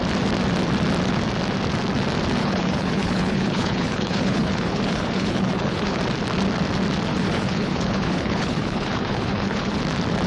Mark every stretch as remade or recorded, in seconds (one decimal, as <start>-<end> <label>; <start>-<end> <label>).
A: 0.0-2.4 recorded; 2.4-6.0 remade; 6.0-7.1 recorded; 7.1-9.8 remade; 9.8-10.3 recorded